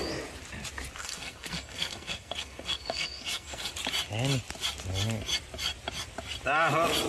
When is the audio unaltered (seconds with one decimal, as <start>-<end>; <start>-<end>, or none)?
0.0-1.0; 3.7-7.1